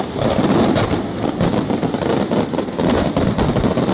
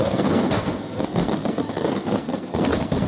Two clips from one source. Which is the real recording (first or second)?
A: first